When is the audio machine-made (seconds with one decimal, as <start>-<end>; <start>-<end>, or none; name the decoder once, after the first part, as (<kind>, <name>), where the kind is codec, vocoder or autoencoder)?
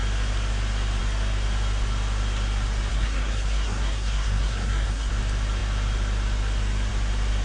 2.9-5.1 (codec, SNAC)